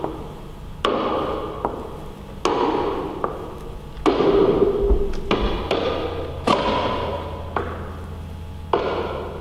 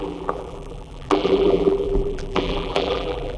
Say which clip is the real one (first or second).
first